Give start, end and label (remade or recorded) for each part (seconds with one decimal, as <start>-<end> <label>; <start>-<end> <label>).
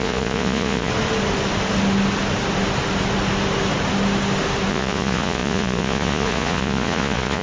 0.0-0.9 remade; 0.9-4.7 recorded; 4.7-7.4 remade